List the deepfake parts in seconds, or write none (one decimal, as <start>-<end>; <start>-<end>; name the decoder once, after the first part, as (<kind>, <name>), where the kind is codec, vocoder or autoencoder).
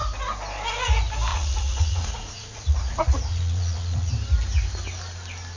1.3-4.1 (vocoder, Vocos)